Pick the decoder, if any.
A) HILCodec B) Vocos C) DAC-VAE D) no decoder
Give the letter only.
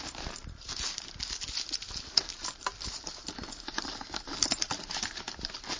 D